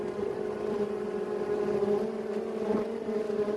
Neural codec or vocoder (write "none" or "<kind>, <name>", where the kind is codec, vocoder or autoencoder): none